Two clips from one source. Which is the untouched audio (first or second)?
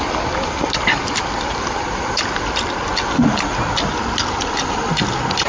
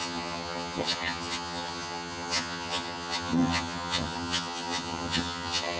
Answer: first